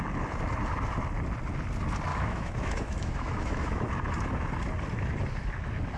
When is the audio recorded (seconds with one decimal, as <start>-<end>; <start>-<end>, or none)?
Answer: 0.0-2.1; 3.9-6.0